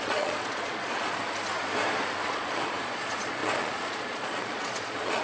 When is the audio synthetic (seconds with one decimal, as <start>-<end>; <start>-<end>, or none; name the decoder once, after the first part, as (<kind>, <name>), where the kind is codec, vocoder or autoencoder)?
0.0-1.2 (vocoder, Vocos); 2.3-5.2